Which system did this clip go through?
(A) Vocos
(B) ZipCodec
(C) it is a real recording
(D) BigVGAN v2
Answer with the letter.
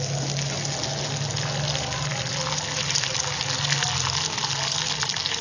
C